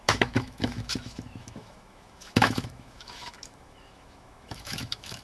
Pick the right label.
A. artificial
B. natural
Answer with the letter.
A